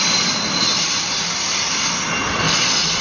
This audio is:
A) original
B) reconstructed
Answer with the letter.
A